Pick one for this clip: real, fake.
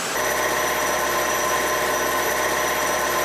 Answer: real